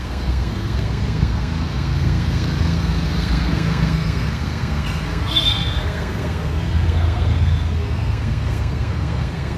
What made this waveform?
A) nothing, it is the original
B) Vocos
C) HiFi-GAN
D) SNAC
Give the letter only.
D